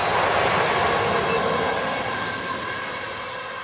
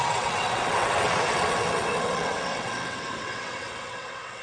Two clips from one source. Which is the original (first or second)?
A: first